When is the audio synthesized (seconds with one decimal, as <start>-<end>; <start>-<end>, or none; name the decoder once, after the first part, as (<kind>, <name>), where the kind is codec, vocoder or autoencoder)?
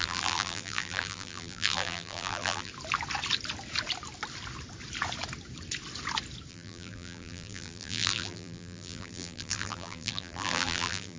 0.0-2.7 (vocoder, BigVGAN v2); 6.5-11.2